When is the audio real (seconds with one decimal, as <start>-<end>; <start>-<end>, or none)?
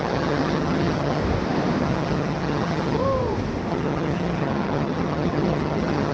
1.2-1.8; 3.0-3.7